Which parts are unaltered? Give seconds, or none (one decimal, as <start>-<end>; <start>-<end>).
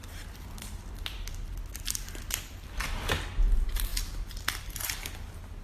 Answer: 0.0-5.6